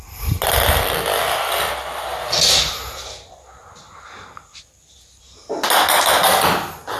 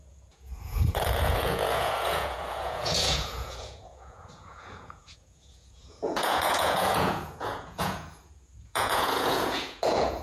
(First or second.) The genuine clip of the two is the first